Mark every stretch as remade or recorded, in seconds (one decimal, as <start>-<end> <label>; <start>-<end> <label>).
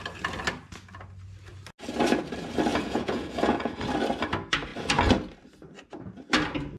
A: 0.0-2.7 recorded; 2.7-3.8 remade; 3.8-6.8 recorded